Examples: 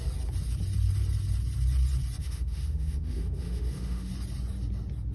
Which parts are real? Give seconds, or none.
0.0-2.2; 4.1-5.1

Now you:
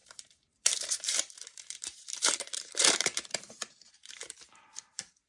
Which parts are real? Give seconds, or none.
none

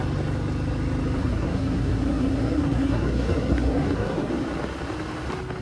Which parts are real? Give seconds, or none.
0.0-1.2; 4.3-5.6

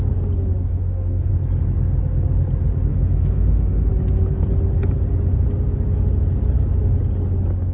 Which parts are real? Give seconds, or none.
0.0-0.7; 1.3-2.9; 3.9-7.7